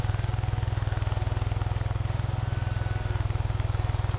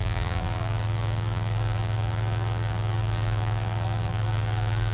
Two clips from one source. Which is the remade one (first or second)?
second